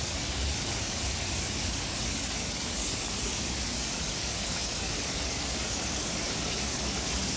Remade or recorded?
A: remade